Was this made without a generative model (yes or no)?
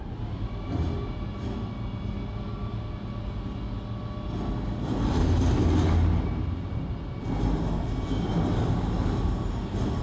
yes